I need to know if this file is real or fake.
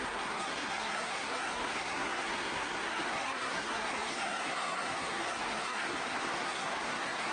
fake